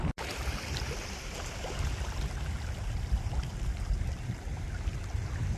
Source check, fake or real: real